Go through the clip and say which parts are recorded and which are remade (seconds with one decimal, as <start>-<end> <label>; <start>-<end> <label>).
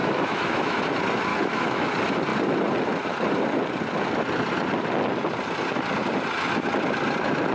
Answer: 0.0-0.8 remade; 0.8-1.3 recorded; 1.3-1.9 remade; 1.9-7.5 recorded